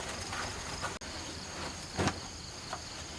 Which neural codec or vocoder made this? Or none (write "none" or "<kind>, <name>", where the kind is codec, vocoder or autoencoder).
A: none